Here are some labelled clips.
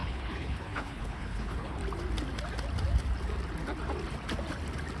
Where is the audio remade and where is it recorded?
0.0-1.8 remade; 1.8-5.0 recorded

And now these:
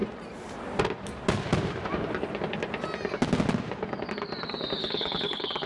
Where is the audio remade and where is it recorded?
0.0-4.8 recorded; 4.8-5.7 remade

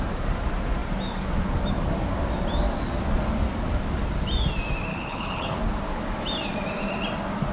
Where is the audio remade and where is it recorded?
0.0-4.9 recorded; 4.9-5.6 remade; 5.6-7.5 recorded

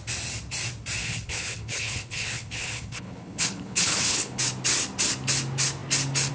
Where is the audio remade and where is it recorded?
0.0-1.0 recorded; 1.0-4.4 remade; 4.4-6.3 recorded

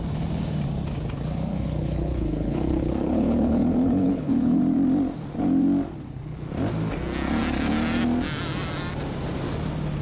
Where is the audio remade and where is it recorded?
0.0-1.5 recorded; 1.5-4.6 remade; 4.6-10.0 recorded